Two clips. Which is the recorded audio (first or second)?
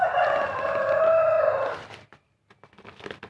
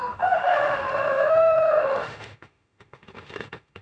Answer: first